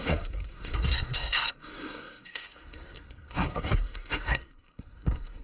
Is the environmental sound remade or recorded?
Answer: remade